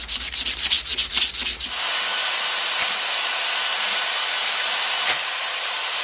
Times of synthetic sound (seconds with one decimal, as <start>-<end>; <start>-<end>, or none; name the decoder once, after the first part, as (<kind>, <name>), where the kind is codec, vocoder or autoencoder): 0.0-1.1 (vocoder, BigVGAN v2); 2.2-6.0